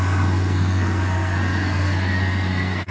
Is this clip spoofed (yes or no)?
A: yes